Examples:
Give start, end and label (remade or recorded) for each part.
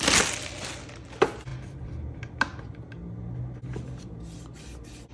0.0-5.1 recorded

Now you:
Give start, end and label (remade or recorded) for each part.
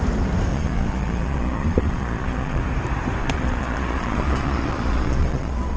0.0-0.5 recorded; 0.5-2.6 remade; 2.6-3.2 recorded; 3.2-5.8 remade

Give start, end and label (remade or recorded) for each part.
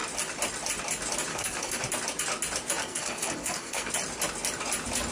0.0-1.3 recorded; 1.3-1.8 remade; 1.8-2.8 recorded; 2.8-3.9 remade; 3.9-5.1 recorded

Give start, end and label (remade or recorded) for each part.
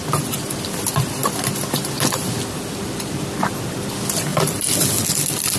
0.0-5.6 recorded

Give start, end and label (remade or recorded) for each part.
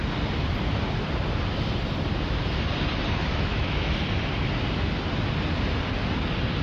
0.0-3.3 recorded; 3.3-3.9 remade; 3.9-6.6 recorded